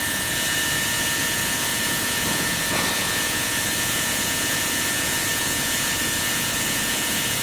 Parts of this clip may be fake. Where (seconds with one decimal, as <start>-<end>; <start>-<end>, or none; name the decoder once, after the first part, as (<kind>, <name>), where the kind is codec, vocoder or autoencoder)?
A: 0.0-7.4 (vocoder, Vocos)